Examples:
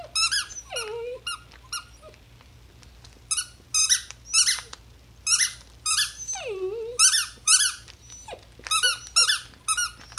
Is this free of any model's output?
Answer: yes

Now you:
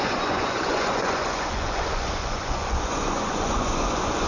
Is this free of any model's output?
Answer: no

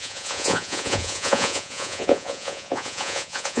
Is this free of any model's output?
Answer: no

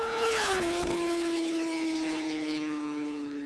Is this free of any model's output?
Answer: no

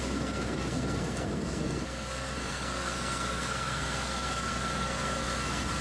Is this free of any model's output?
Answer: no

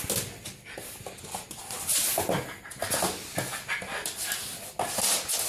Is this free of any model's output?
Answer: yes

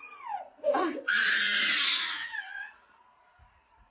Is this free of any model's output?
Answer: no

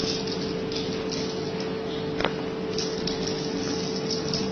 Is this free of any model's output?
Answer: yes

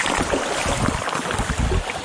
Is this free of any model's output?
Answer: yes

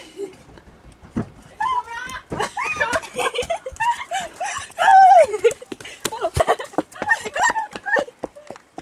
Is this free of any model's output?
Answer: yes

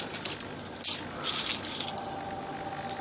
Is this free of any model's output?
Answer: yes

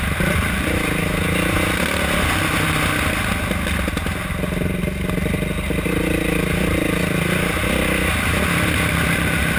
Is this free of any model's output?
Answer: yes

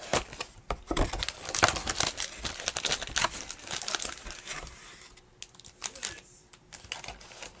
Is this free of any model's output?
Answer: yes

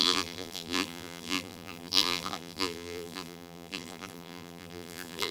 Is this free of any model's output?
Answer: no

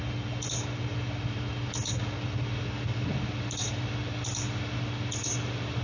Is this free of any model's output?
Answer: yes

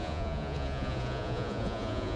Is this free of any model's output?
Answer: no